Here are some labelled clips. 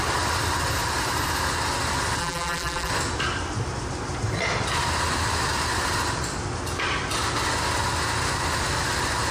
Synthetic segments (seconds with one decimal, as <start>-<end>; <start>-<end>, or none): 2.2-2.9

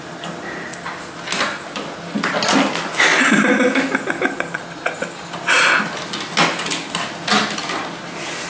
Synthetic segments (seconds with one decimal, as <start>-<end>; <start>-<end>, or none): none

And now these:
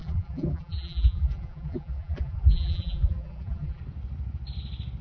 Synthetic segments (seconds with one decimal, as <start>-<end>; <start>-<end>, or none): 0.0-3.8

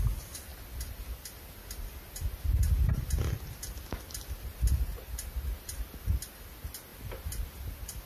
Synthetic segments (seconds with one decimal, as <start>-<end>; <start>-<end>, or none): none

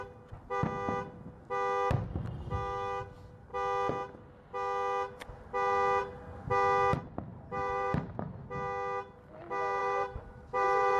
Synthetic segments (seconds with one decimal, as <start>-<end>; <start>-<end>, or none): 7.3-8.3; 9.8-11.0

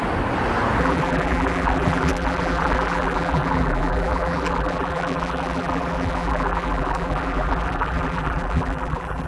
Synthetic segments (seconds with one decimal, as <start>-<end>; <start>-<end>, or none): 0.8-9.3

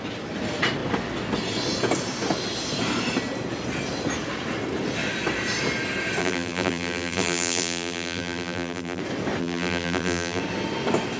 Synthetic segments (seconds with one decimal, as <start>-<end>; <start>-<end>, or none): 6.2-9.0; 9.4-10.4

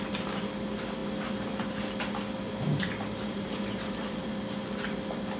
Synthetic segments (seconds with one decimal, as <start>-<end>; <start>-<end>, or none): 2.7-4.3